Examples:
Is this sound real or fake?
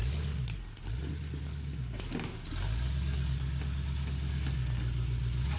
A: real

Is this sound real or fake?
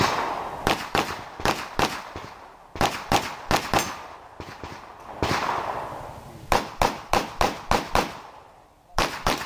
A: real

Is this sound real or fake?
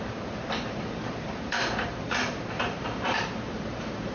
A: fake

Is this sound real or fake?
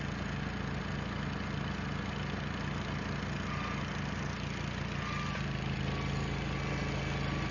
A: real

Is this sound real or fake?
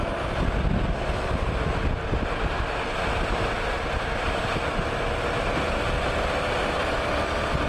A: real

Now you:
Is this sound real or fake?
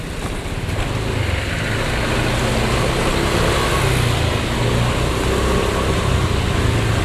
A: real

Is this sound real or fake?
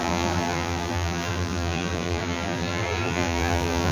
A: fake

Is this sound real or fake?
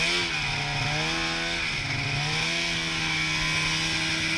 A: real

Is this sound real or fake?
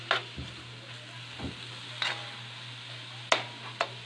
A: real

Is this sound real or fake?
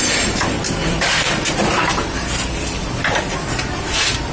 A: real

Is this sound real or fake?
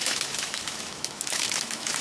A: fake